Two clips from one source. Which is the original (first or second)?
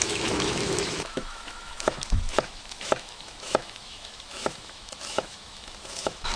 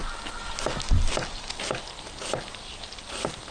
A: second